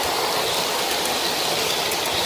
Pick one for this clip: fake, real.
real